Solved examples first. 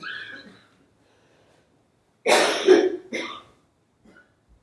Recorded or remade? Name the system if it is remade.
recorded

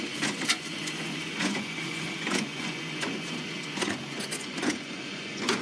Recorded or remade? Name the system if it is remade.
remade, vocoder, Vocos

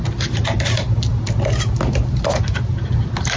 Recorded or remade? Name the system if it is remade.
recorded